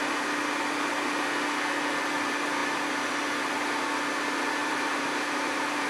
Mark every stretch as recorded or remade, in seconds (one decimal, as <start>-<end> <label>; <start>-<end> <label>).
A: 0.0-4.6 recorded; 4.6-5.9 remade